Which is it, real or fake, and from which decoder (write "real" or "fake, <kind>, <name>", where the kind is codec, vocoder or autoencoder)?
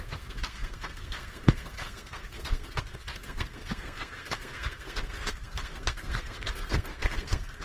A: fake, codec, SNAC